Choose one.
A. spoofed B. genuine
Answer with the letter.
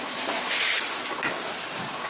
B